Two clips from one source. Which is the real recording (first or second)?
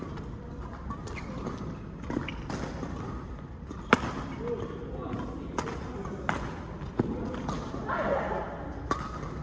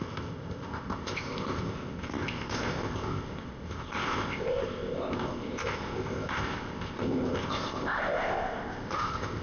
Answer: first